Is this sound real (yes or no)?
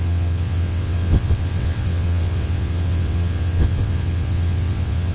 no